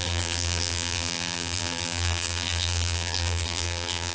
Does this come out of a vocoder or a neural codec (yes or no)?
yes